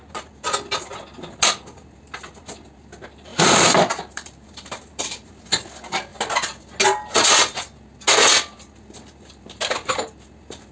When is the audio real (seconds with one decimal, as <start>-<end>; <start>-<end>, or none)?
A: 0.0-3.3; 5.3-10.7